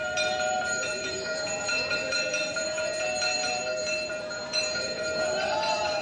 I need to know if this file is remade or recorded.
remade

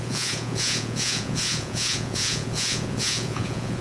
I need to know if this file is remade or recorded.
remade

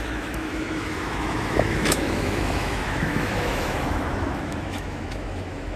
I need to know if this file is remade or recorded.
remade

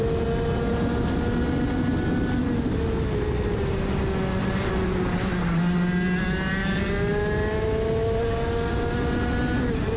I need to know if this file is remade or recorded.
recorded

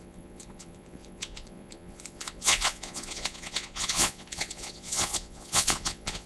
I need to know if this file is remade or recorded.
remade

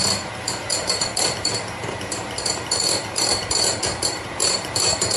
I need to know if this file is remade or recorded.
remade